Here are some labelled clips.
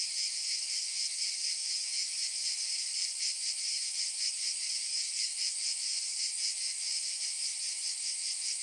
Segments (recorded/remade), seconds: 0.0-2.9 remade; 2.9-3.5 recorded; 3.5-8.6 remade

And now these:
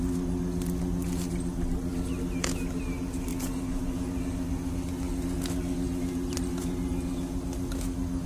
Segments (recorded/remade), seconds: 0.0-8.3 recorded

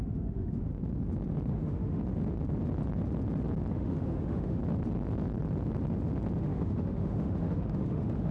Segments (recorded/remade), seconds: 0.0-0.7 remade; 0.7-1.5 recorded; 1.5-2.0 remade; 2.0-3.7 recorded; 3.7-4.6 remade; 4.6-6.4 recorded; 6.4-8.3 remade

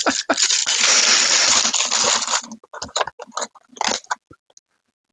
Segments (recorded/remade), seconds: 0.0-5.1 recorded

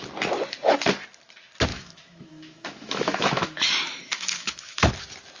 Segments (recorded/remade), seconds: 0.0-1.7 recorded; 1.7-4.9 remade; 4.9-5.4 recorded

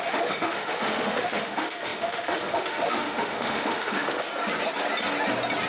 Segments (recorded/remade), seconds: 0.0-4.3 remade; 4.3-5.7 recorded

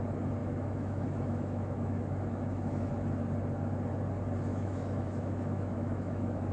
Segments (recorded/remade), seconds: 0.0-0.4 recorded; 0.4-2.9 remade; 2.9-4.5 recorded; 4.5-6.5 remade